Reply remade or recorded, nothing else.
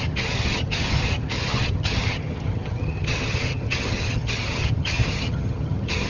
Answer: remade